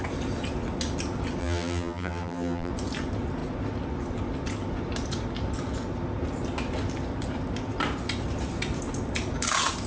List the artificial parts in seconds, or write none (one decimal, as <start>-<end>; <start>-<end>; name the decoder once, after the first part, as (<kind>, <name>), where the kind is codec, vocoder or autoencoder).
1.4-2.7 (vocoder, BigVGAN v2)